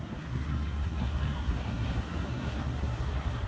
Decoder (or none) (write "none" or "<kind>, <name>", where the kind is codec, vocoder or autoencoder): codec, SNAC